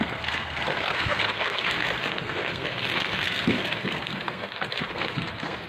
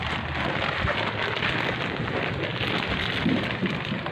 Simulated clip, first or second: first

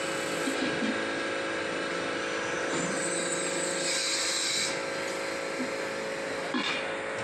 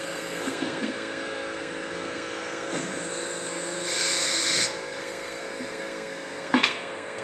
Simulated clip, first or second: second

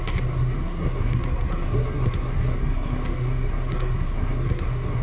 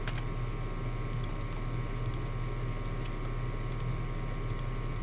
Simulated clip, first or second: first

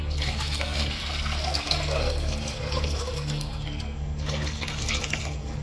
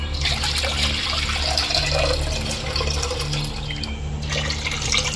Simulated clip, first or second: first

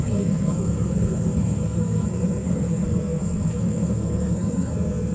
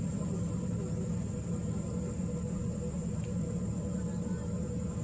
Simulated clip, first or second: first